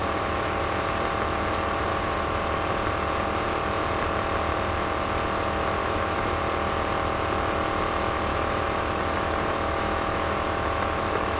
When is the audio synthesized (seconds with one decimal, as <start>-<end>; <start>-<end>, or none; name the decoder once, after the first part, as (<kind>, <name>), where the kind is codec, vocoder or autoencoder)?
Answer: 0.0-0.6 (autoencoder, DAC-VAE); 1.9-2.4; 5.8-6.4; 8.3-11.4

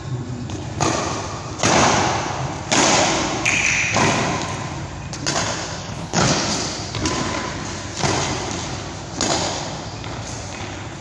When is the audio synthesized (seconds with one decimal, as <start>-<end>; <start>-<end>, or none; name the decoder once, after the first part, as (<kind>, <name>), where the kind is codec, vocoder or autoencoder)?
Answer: 5.8-6.3 (codec, HILCodec)